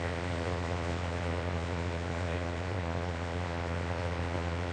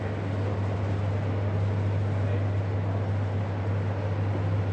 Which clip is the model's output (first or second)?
first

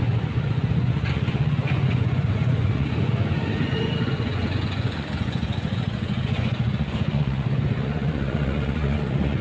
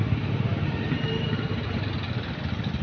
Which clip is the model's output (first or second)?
first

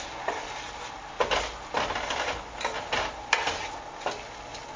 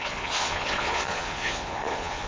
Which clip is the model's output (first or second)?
second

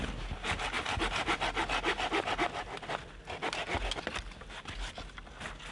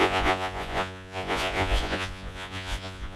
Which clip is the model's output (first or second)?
second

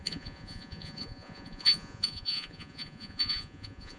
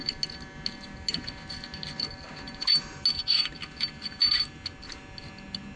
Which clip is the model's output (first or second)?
first